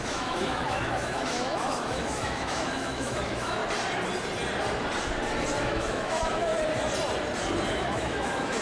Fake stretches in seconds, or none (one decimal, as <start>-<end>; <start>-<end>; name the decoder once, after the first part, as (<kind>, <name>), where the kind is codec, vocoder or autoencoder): 0.0-3.6 (autoencoder, DAC-VAE); 5.6-6.5; 7.7-8.6